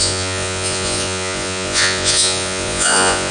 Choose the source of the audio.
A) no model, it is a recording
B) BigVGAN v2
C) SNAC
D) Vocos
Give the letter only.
D